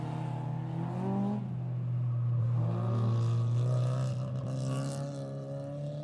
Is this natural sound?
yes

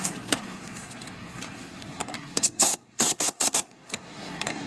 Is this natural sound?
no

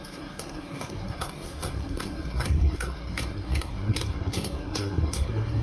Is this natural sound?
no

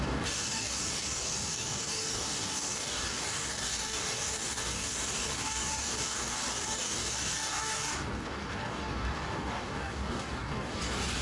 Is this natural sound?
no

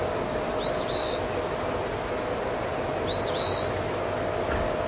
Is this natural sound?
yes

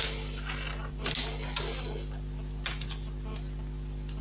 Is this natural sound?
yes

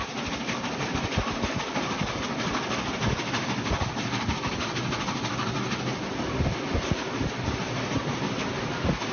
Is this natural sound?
yes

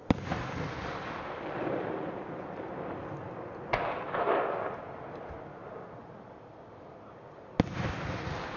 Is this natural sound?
yes